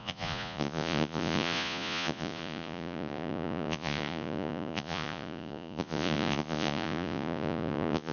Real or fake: fake